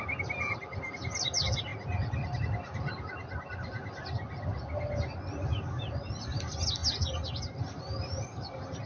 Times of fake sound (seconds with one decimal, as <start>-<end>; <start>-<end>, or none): none

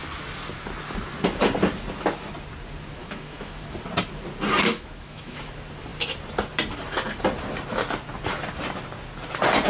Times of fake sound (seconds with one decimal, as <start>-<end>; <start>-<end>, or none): 3.0-3.6; 4.7-5.4

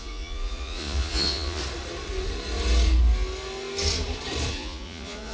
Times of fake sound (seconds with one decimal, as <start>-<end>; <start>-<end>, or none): 0.0-1.6; 4.5-5.3

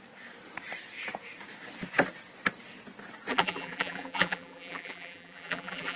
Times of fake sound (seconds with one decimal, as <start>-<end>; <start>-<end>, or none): 3.3-6.0